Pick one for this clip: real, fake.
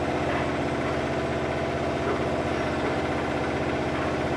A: real